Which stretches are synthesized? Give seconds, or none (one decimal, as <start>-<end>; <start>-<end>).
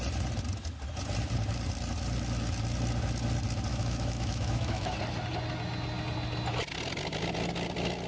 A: 3.7-4.9